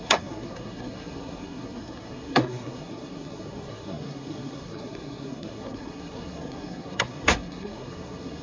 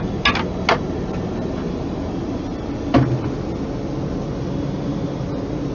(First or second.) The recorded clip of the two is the second